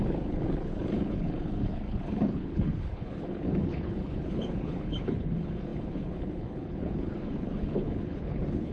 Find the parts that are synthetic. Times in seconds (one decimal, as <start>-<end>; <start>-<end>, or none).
0.0-8.7